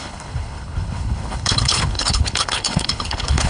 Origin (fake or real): fake